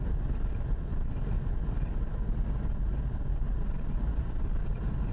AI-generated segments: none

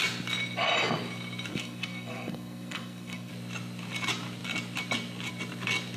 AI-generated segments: 1.5-3.3 (codec, SNAC)

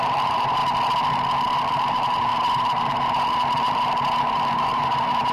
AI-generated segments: 0.0-0.6 (vocoder, BigVGAN v2); 1.7-5.3

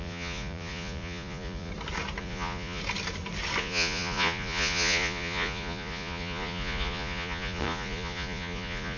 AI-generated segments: 0.0-1.7 (vocoder, Vocos); 2.2-2.8; 3.6-9.0

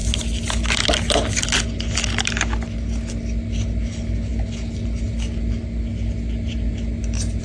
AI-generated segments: none

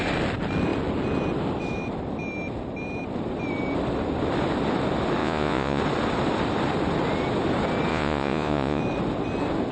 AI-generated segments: 5.2-5.8 (vocoder, Vocos); 7.9-8.8